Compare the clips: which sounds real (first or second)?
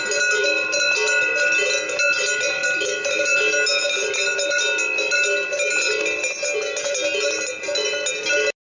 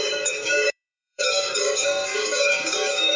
first